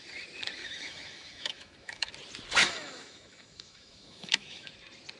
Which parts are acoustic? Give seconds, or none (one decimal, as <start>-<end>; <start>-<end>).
0.0-0.6; 2.1-2.6; 4.7-5.2

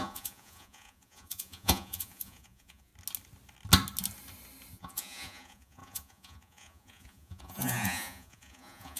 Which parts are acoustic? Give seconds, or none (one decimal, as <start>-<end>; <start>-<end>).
2.9-4.7

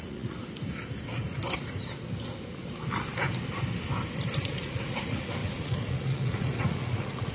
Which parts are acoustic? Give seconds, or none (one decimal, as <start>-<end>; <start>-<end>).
0.4-4.4

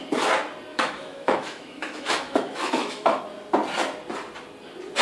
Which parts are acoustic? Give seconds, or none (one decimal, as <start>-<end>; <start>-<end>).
0.0-0.7; 3.2-5.0